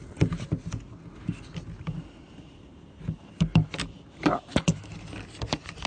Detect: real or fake real